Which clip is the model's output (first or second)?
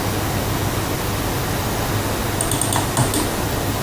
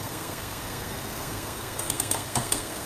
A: second